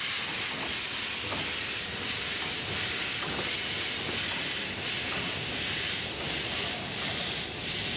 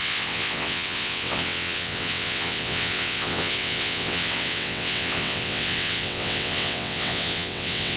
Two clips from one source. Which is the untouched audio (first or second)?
first